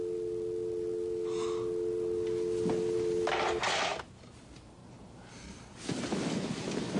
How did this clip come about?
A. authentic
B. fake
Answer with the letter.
A